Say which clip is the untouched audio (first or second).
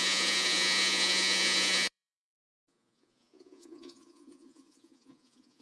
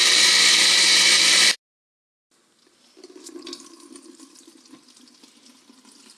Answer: second